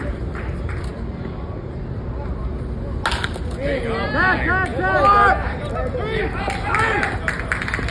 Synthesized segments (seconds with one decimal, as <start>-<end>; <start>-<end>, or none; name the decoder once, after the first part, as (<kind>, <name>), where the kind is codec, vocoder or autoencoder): none